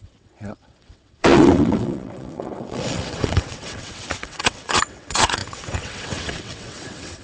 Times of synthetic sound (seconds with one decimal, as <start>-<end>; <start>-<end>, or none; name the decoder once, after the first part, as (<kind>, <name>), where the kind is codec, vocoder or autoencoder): 0.0-7.2 (vocoder, WaveNeXt)